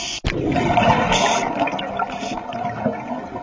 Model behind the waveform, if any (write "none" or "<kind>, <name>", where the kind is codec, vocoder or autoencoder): none